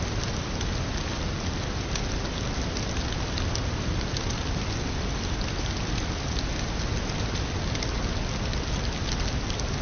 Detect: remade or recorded recorded